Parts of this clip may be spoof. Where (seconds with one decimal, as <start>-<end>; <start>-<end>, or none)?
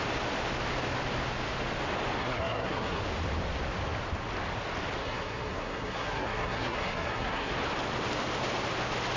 2.2-3.0; 5.0-7.5